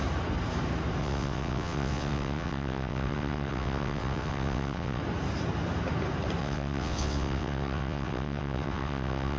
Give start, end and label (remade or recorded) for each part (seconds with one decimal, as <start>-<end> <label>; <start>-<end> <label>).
0.0-1.0 recorded; 1.0-5.0 remade; 5.0-6.4 recorded; 6.4-9.4 remade